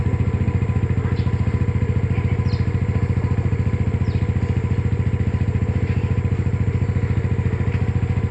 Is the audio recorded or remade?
recorded